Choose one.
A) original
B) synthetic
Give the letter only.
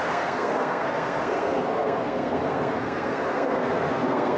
B